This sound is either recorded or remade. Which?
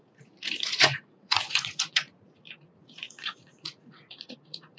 remade